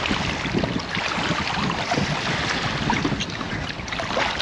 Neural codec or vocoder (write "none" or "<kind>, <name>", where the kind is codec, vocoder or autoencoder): none